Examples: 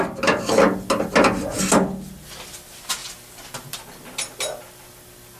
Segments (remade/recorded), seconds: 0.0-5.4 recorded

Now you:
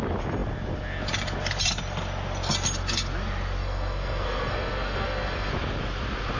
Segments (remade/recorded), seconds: 0.0-3.6 recorded; 3.6-5.5 remade; 5.5-6.4 recorded

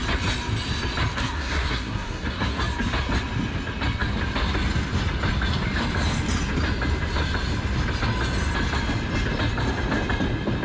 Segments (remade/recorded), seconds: 0.0-1.1 recorded; 1.1-2.6 remade; 2.6-10.6 recorded

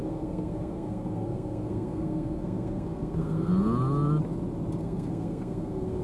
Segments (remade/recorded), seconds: 0.0-3.5 remade; 3.5-4.8 recorded; 4.8-6.0 remade

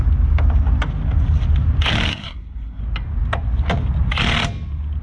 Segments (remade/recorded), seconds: 0.0-2.1 recorded; 2.1-2.8 remade; 2.8-5.0 recorded